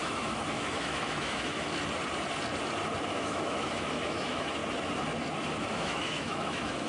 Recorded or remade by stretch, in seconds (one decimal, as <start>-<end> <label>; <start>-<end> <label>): 0.0-1.7 remade; 1.7-3.1 recorded; 3.1-4.6 remade; 4.6-5.6 recorded; 5.6-6.9 remade